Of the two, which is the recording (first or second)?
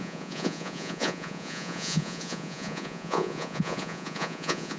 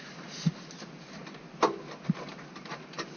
second